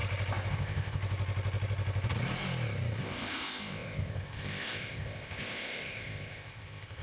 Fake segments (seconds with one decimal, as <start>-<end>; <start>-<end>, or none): 0.5-1.0; 3.0-7.0